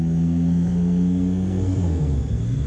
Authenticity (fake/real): fake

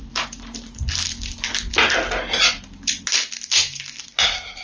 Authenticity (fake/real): real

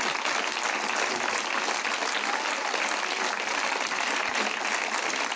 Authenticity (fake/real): real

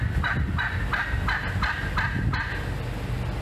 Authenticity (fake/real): real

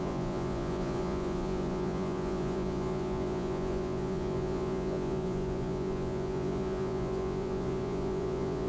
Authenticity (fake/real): fake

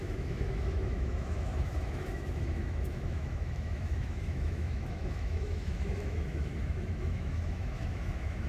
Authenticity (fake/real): fake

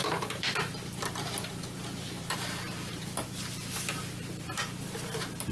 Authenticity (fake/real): fake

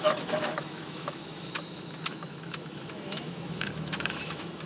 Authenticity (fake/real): fake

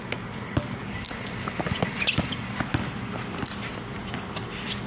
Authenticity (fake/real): real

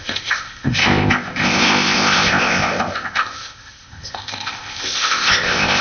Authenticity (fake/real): fake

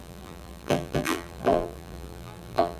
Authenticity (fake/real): fake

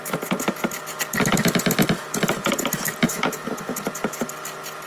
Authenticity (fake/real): real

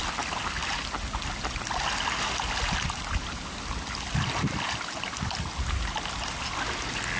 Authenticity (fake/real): real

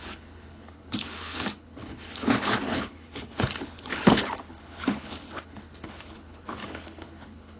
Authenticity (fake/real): fake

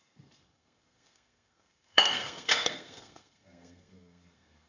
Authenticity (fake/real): fake